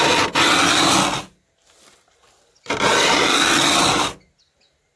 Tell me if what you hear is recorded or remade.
recorded